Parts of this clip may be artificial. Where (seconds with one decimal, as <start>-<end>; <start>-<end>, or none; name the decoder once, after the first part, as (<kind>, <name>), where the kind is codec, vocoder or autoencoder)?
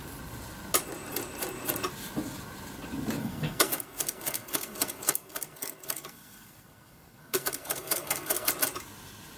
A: 3.2-8.5 (codec, SNAC)